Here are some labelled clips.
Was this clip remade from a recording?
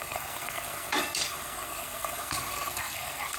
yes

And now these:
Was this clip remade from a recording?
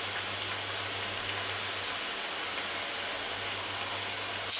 no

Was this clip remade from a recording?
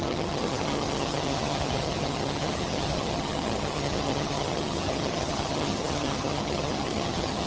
yes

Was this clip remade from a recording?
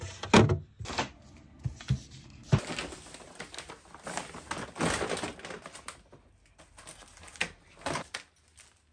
no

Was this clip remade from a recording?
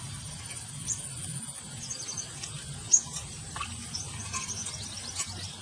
no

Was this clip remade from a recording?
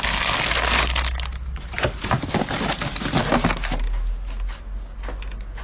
no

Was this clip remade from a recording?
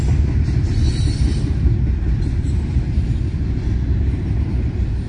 no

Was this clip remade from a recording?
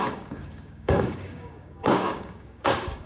yes